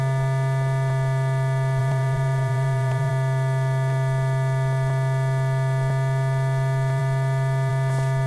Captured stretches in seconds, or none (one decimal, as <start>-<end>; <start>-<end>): 0.0-1.8; 3.1-8.3